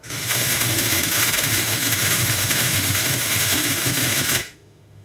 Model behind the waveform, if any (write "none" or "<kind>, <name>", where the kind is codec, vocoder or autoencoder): autoencoder, DAC-VAE